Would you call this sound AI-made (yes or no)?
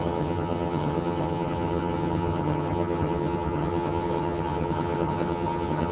yes